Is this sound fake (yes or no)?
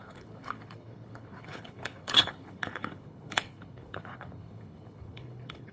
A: yes